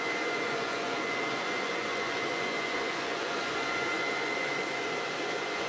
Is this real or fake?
fake